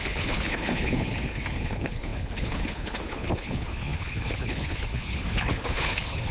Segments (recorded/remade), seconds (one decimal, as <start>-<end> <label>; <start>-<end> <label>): 0.0-6.3 remade